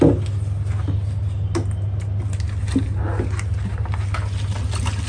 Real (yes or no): yes